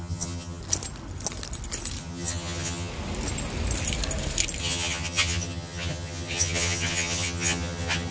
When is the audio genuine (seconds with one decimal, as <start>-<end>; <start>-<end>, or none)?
0.6-2.0; 2.9-4.6

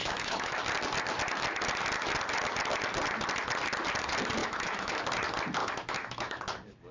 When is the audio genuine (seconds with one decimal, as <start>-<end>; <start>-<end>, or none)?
0.6-4.4; 5.0-5.6; 6.4-6.9

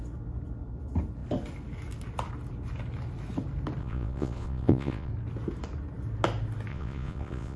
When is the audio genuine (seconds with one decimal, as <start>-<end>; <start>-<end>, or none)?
0.0-3.8; 5.1-6.7

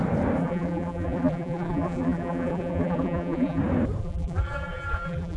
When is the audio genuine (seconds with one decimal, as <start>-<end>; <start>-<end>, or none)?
0.0-0.4; 3.6-4.0

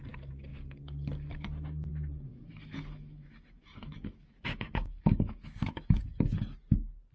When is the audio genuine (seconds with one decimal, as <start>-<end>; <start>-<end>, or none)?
0.0-2.3; 6.0-7.1

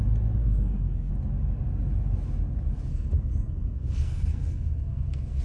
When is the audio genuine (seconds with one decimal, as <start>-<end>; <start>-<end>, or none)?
0.0-0.4; 1.1-2.9